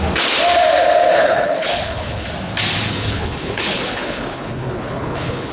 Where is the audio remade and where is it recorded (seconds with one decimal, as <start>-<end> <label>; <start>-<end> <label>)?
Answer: 0.0-1.1 recorded; 1.1-2.3 remade; 2.3-2.9 recorded; 2.9-5.5 remade